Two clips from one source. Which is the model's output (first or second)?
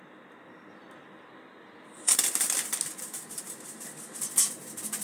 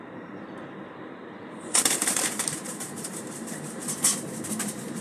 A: second